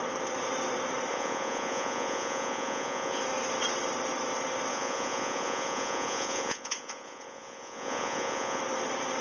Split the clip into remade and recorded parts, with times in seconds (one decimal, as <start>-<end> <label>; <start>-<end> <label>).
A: 0.0-1.1 recorded; 1.1-3.2 remade; 3.2-4.7 recorded; 4.7-8.6 remade; 8.6-9.2 recorded